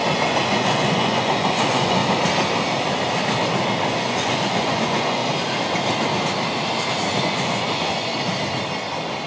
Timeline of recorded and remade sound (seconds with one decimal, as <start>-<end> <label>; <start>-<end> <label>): 0.0-2.0 remade; 2.0-3.9 recorded; 3.9-5.2 remade; 5.2-7.2 recorded; 7.2-8.1 remade; 8.1-9.3 recorded